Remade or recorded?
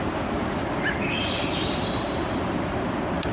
recorded